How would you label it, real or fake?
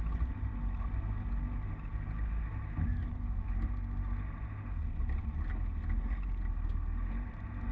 real